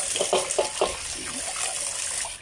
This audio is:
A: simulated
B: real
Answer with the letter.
B